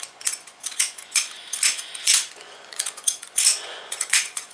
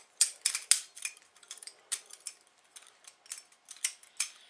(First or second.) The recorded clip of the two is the second